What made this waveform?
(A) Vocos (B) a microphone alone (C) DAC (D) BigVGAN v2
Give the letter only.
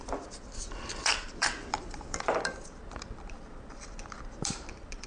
D